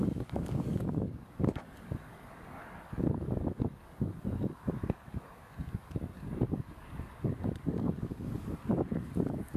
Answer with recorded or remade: remade